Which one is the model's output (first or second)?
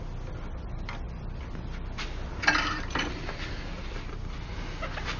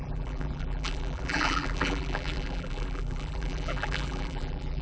second